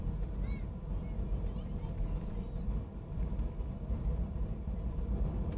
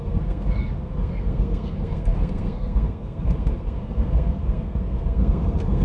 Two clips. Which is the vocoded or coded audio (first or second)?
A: second